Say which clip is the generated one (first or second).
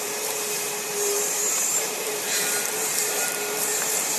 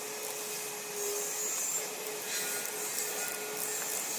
first